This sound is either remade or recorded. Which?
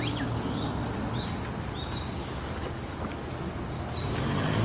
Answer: recorded